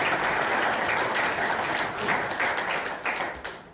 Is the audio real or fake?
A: real